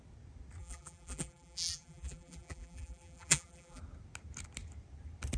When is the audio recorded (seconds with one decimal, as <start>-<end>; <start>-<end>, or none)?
0.0-0.6; 3.8-5.4